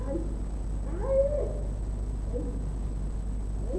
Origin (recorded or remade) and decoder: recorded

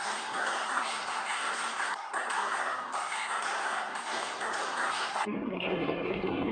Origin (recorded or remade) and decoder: remade, codec, SNAC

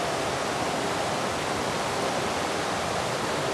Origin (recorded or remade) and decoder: recorded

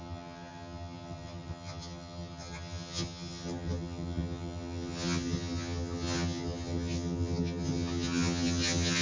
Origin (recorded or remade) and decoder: remade, vocoder, HiFi-GAN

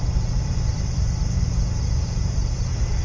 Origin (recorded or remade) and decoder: remade, vocoder, BigVGAN v2